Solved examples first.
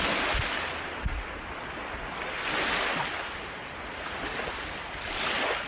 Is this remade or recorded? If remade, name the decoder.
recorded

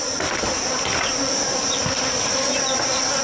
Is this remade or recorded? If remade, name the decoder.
recorded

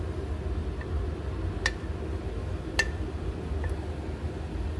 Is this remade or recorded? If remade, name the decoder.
recorded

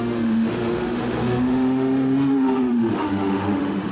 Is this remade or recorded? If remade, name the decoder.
remade, autoencoder, DAC-VAE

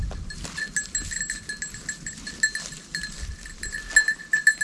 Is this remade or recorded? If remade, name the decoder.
recorded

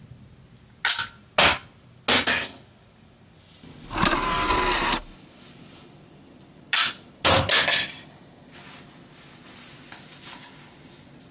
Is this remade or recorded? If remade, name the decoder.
recorded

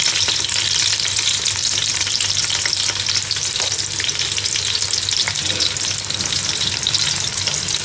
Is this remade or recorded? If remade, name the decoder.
recorded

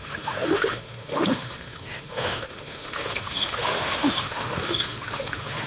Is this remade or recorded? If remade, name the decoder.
remade, autoencoder, DAC-VAE